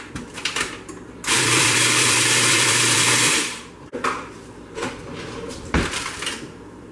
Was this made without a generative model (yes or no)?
no